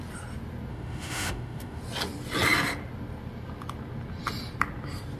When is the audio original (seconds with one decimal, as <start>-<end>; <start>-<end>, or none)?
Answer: 0.0-0.7; 1.8-5.2